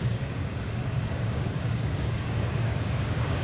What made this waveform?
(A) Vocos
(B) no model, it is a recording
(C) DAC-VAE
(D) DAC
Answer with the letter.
D